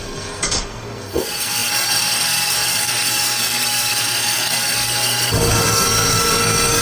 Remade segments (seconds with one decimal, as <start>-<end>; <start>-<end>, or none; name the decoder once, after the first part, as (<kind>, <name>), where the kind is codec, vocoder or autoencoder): 0.0-6.8 (codec, SNAC)